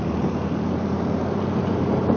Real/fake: fake